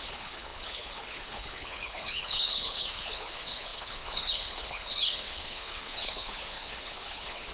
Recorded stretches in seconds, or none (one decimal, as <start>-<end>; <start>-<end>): none